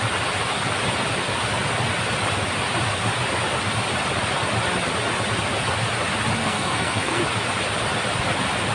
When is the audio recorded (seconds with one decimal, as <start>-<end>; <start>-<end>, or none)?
0.0-6.4; 7.2-8.7